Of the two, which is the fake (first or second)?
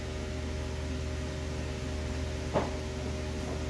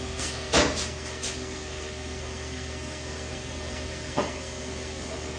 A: second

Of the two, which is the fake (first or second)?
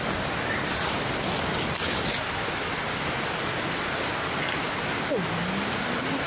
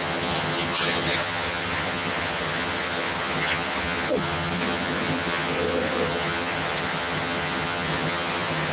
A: second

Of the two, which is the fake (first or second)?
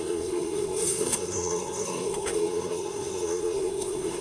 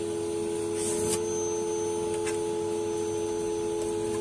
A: first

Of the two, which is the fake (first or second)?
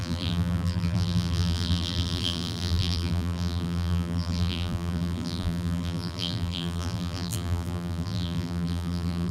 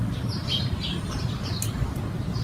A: first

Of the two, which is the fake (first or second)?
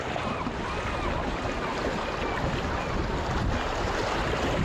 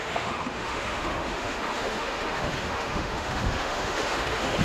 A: second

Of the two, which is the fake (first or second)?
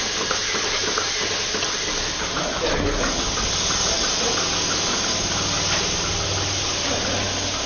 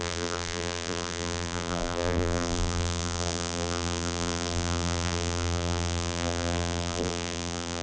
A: second